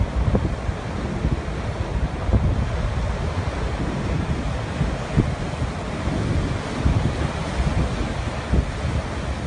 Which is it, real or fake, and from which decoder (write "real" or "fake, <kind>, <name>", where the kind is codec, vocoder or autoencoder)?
real